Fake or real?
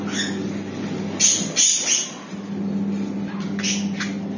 real